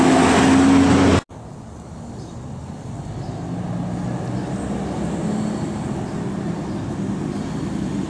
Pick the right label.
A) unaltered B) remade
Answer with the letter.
A